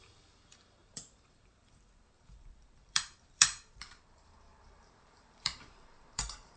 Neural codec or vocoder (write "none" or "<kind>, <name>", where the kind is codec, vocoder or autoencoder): vocoder, BigVGAN v2